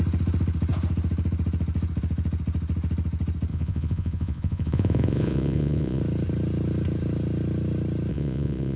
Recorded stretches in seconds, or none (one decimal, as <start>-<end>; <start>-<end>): 0.0-3.5; 6.0-8.1

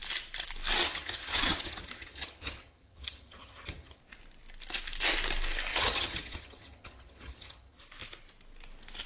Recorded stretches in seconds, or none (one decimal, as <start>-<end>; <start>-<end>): 0.0-0.8; 4.0-5.7; 7.8-9.1

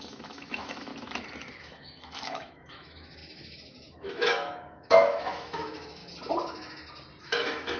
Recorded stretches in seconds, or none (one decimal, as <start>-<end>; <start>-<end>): 0.9-1.6; 6.0-7.2

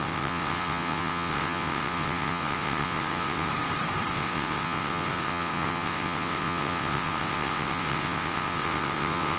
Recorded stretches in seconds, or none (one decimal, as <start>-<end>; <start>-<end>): 3.5-4.1

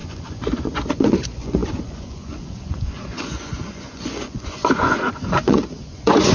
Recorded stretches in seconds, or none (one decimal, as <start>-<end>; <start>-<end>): none

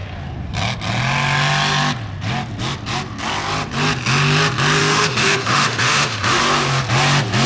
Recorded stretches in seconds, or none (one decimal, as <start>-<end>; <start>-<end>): 0.0-4.8; 6.4-7.5

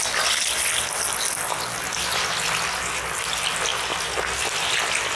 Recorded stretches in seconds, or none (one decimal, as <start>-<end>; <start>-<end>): 0.0-5.2

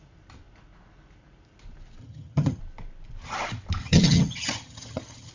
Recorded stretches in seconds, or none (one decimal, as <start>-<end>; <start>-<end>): 0.0-2.0; 2.6-3.8